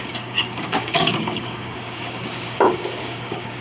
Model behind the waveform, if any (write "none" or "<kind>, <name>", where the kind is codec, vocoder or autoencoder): codec, DAC